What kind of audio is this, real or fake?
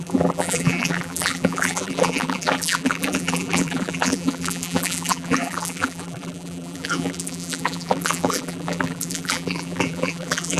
fake